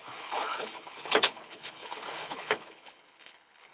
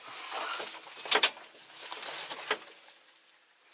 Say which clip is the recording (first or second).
second